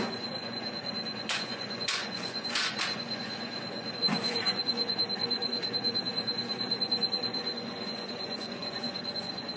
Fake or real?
fake